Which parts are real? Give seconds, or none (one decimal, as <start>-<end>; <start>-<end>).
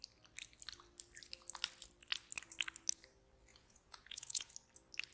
0.0-3.5; 4.5-5.1